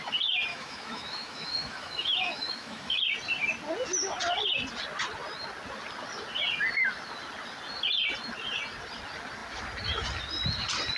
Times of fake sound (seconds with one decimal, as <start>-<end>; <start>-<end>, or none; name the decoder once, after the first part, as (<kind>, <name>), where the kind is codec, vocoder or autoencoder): 0.5-3.0 (autoencoder, DAC-VAE)